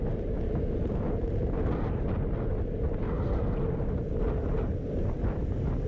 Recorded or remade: recorded